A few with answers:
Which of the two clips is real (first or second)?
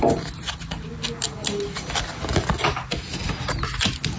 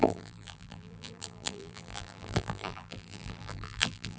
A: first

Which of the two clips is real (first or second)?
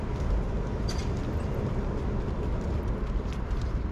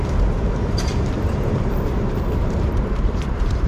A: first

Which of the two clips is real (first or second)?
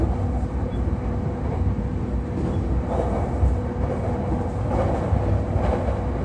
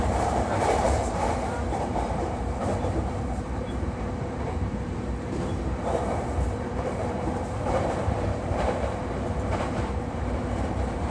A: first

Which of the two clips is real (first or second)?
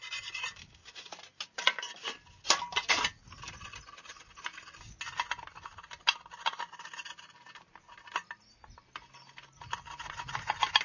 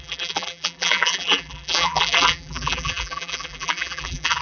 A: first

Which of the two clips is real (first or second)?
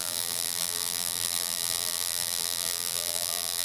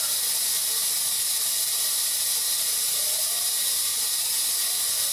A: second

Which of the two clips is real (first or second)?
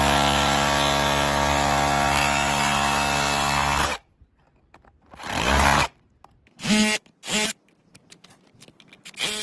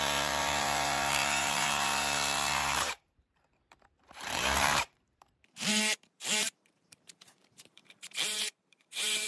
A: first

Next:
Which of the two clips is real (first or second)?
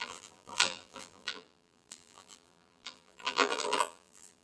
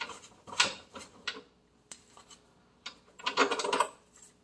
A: second